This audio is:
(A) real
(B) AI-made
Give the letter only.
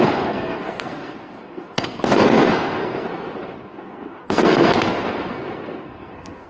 B